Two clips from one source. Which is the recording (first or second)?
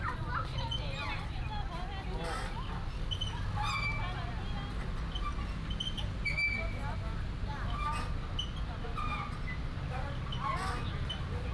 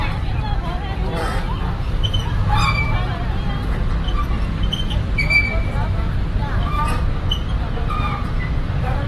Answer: first